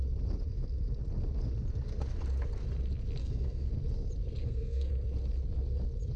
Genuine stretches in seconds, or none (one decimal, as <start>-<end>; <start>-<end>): 0.0-3.2; 3.7-4.4; 4.9-6.2